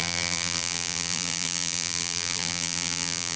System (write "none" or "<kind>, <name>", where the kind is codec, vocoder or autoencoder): vocoder, BigVGAN v2